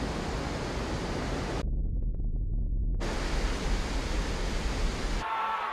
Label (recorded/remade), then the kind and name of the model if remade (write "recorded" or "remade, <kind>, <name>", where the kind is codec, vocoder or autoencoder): recorded